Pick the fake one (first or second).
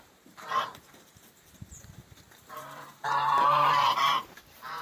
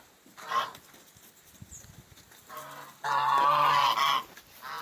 first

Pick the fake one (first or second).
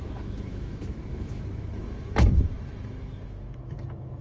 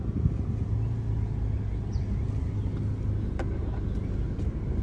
first